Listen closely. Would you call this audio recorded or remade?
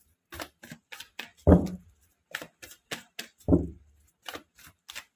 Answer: recorded